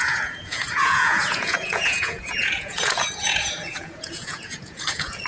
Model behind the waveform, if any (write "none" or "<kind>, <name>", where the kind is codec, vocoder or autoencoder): vocoder, Vocos